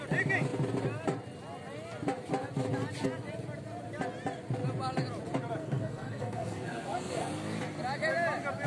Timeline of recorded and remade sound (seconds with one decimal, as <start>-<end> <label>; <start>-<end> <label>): 0.0-5.6 recorded; 5.6-7.3 remade; 7.3-8.7 recorded